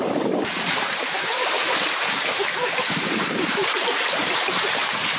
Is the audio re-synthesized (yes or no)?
yes